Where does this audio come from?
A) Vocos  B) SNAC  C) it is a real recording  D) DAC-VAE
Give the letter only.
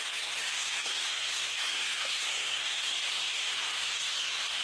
B